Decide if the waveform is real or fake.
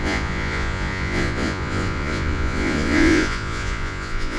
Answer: fake